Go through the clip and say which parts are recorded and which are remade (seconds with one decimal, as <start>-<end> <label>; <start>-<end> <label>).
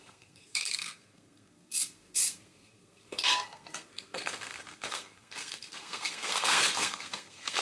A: 0.0-7.6 remade